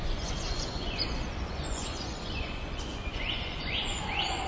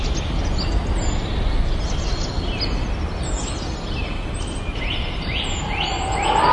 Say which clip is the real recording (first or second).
second